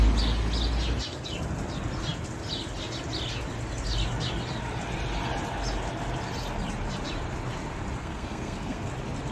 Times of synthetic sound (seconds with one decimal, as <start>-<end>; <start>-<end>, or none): 8.0-8.9